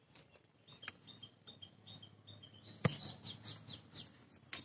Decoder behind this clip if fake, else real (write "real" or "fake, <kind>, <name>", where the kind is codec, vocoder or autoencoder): real